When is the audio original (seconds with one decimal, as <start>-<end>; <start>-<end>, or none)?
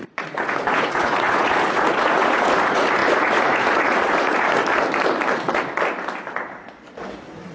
4.6-7.5